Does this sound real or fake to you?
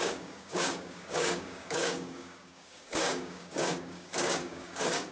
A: fake